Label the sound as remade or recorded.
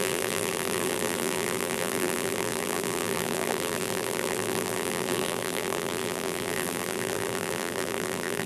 remade